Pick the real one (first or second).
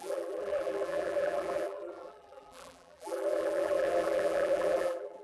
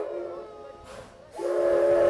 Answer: second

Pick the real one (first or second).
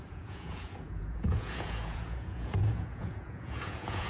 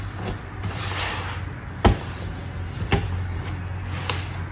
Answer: second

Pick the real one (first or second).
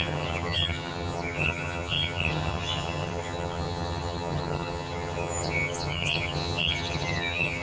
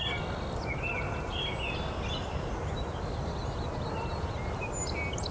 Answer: second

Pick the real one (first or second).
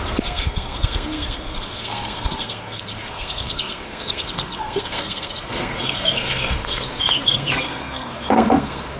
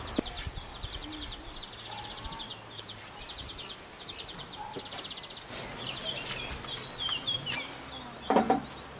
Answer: second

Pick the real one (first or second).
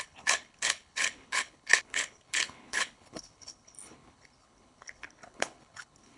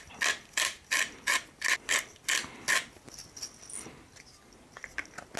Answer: second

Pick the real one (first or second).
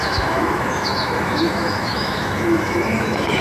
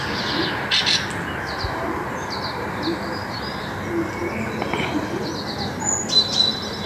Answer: second